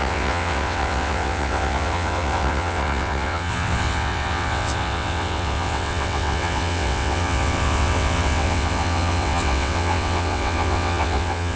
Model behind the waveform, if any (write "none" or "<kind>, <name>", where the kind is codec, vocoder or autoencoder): vocoder, WaveNeXt